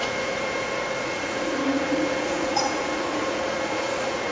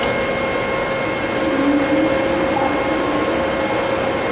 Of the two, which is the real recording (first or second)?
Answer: second